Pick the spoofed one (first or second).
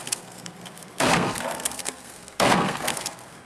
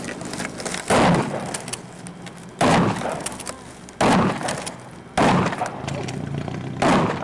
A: first